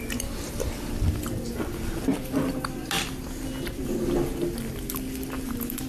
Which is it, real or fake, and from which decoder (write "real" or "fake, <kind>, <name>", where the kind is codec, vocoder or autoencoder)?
real